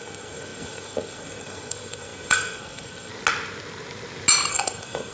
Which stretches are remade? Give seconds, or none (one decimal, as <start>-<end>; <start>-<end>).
0.0-3.1; 4.5-5.1